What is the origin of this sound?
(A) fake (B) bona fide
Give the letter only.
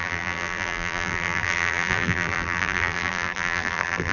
A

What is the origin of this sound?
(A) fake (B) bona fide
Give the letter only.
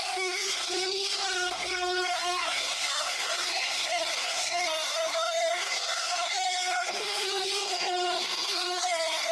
A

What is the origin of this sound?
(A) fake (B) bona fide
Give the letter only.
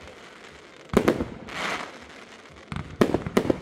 B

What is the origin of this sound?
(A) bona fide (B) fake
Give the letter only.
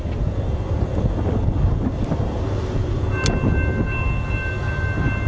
A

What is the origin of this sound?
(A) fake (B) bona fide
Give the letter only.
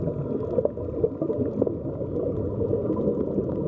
B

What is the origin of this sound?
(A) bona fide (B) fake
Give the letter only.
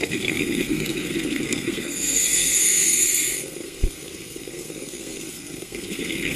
B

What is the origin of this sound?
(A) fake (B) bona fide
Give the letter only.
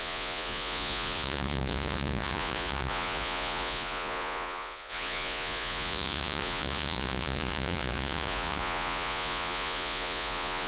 A